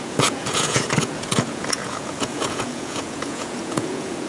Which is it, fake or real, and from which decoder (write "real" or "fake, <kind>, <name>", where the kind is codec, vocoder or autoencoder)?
fake, vocoder, Vocos